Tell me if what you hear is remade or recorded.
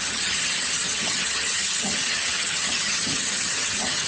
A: remade